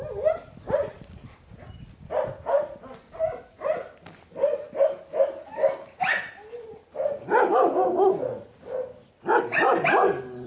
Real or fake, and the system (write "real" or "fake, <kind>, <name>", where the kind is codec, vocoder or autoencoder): real